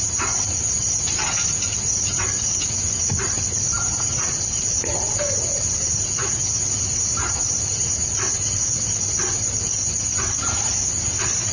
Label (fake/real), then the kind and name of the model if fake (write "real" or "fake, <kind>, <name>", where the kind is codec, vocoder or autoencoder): real